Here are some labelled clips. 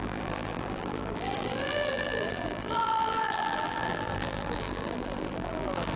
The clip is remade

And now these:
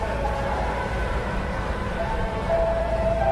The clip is remade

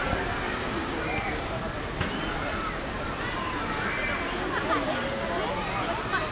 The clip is recorded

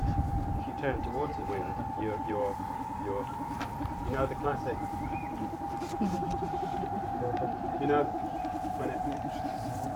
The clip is remade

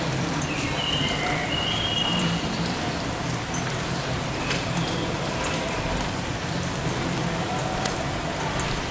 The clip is remade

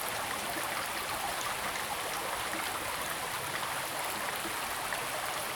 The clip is recorded